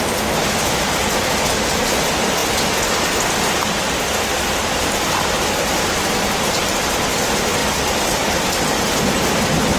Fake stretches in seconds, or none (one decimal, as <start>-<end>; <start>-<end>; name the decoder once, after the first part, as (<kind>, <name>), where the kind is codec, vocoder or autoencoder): none